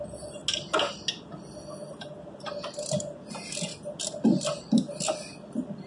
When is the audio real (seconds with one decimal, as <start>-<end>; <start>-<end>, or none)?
0.0-5.9